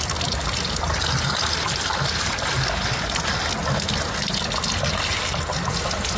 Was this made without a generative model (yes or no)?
yes